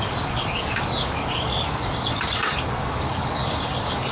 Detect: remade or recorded remade